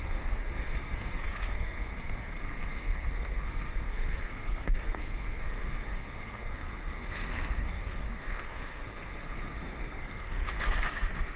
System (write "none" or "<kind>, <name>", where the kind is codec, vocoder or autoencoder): codec, SNAC